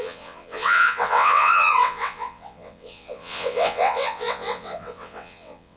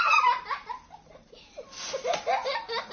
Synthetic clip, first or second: first